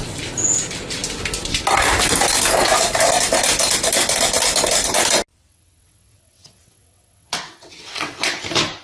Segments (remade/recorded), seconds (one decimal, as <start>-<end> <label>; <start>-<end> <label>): 0.0-5.5 recorded; 5.5-8.3 remade; 8.3-8.8 recorded